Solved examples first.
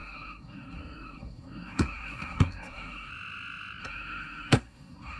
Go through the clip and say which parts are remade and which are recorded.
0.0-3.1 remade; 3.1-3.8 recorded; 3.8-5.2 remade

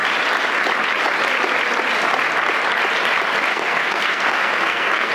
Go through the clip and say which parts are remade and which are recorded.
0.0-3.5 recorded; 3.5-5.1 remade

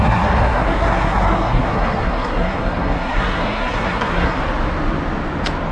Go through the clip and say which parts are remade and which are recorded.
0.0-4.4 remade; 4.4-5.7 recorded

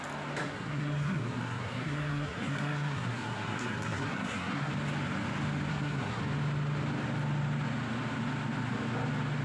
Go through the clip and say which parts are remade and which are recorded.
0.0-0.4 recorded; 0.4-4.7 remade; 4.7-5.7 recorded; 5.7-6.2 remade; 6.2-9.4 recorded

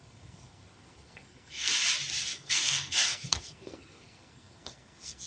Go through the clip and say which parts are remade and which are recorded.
0.0-1.7 remade; 1.7-2.2 recorded; 2.2-5.3 remade